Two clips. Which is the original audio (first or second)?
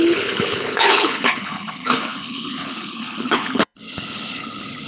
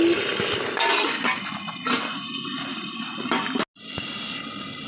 second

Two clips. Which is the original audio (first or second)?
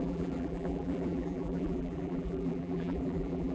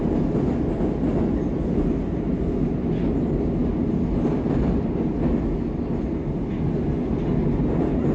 second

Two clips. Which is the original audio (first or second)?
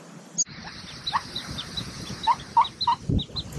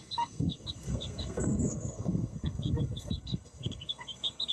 first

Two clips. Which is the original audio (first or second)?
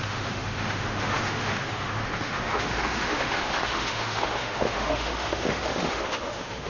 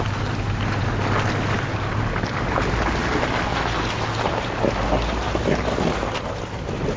second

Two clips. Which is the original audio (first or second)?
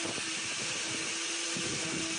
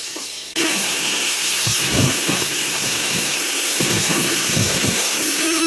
first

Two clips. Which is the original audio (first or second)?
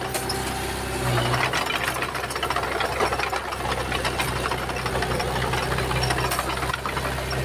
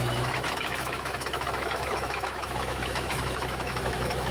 first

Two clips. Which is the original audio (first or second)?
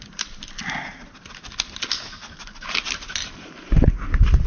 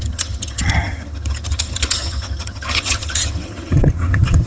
first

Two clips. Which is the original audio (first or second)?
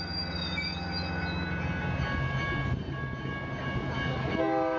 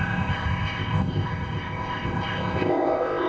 first